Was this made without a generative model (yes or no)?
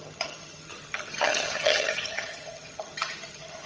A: no